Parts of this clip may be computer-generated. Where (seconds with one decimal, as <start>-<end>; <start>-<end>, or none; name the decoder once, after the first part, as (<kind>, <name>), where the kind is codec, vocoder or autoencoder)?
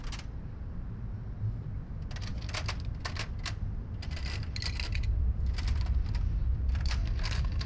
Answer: 7.0-7.7 (codec, SNAC)